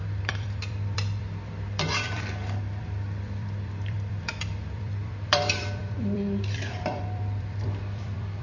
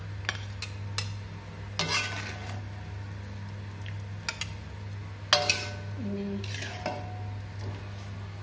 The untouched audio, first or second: second